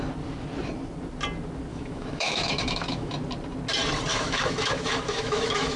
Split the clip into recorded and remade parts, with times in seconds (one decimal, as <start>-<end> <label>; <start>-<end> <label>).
0.0-1.7 recorded; 1.7-3.1 remade; 3.1-4.1 recorded; 4.1-5.8 remade